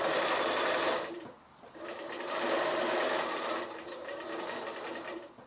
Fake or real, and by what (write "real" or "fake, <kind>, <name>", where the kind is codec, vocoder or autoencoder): real